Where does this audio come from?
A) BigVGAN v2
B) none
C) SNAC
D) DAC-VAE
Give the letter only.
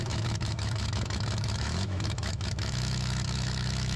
D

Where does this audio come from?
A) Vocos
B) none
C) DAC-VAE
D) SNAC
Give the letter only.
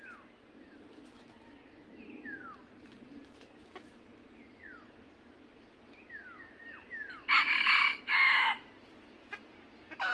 B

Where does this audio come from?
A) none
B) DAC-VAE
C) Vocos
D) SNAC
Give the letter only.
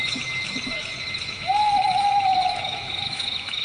B